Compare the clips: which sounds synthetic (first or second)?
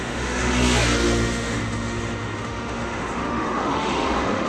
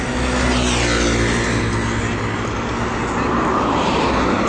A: first